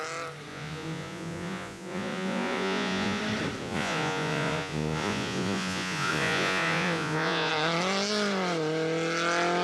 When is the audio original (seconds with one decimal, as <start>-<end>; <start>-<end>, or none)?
0.0-0.5; 3.2-3.6; 7.5-9.6